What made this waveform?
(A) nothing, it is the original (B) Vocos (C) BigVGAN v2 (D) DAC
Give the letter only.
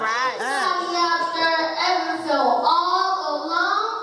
A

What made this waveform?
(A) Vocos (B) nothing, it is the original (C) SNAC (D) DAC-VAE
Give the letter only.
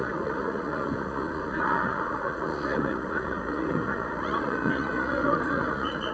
A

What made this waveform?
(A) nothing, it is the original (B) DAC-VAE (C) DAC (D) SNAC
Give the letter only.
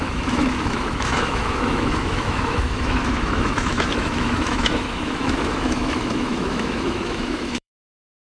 B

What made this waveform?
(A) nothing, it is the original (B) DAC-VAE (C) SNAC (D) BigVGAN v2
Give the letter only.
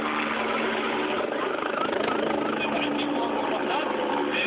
A